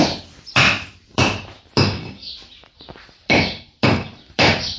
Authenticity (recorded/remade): remade